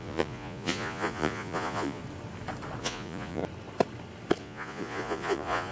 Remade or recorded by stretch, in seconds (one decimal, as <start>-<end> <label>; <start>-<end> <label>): 0.0-2.0 remade; 2.0-2.8 recorded; 2.8-3.4 remade; 3.4-4.4 recorded; 4.4-5.7 remade